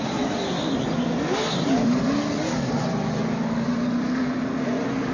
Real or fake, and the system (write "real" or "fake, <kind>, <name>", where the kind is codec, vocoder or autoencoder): real